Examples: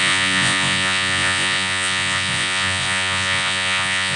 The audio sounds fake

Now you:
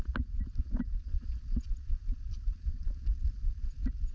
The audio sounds real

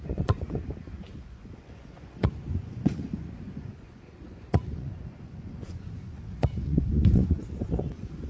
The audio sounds fake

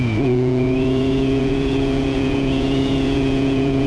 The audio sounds fake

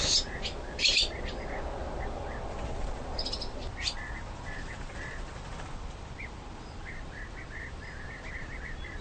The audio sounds real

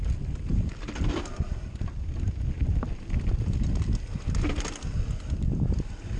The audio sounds real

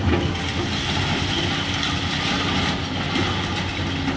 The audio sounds real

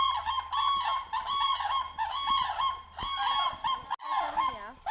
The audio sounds real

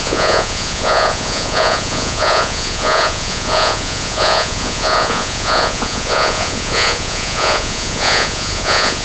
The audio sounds fake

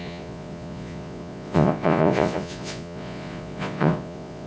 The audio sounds fake